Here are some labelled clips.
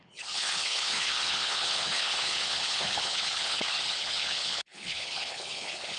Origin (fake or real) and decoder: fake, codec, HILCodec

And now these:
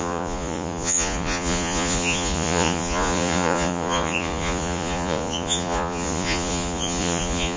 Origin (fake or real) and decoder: fake, vocoder, Vocos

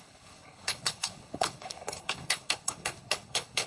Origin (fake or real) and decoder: fake, codec, HILCodec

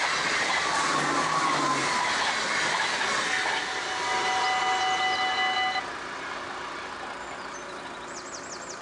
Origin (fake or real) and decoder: real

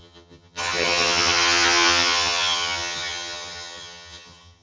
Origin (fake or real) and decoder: fake, vocoder, HiFi-GAN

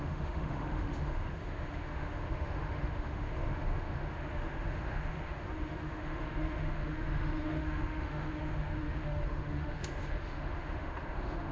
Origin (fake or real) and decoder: fake, autoencoder, DAC-VAE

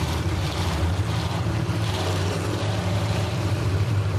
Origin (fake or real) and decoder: fake, vocoder, BigVGAN v2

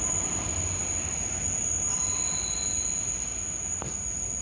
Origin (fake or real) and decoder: real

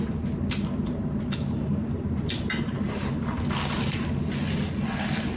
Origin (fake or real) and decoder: real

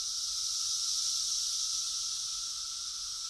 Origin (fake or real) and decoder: real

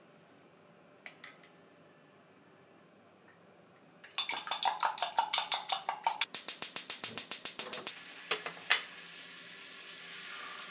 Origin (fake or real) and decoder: real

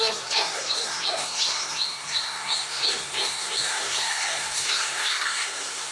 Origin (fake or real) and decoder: fake, codec, SNAC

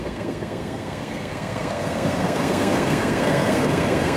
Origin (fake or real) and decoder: fake, codec, SNAC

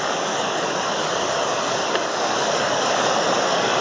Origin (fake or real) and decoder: fake, codec, DAC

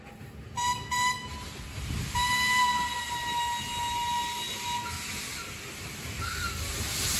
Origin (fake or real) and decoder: real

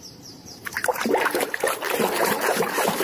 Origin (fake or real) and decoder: fake, vocoder, BigVGAN v2